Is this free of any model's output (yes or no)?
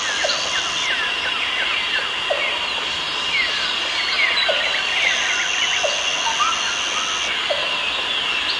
yes